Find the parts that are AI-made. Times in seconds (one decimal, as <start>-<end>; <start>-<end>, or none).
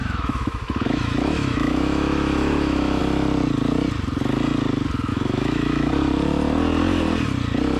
0.0-3.0; 5.1-5.9